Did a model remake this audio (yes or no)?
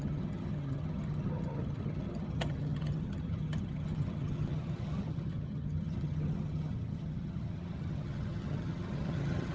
yes